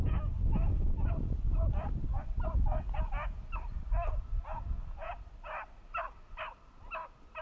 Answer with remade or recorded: recorded